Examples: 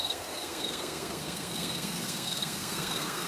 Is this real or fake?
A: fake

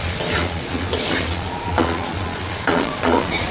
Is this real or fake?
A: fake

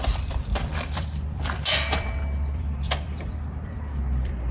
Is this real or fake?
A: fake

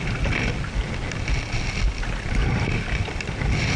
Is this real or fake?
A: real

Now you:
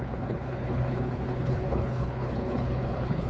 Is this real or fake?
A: fake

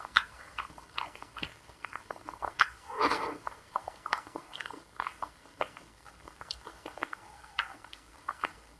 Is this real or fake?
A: fake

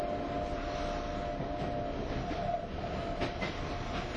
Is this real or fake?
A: real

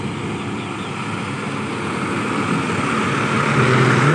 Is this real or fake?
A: real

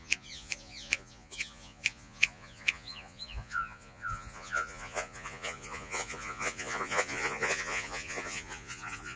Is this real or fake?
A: fake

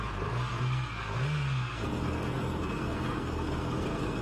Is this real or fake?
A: fake